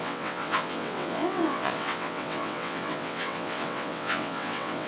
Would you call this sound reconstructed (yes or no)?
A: yes